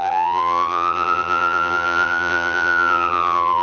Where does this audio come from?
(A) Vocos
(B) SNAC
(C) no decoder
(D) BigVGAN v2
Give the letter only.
D